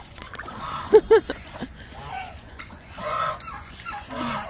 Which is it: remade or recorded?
remade